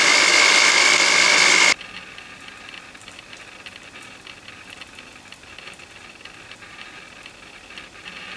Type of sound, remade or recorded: recorded